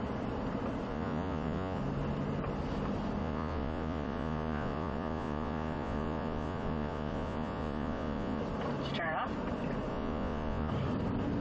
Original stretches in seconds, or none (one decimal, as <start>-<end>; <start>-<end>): 0.0-0.9; 1.8-3.2; 8.4-9.9; 10.7-11.4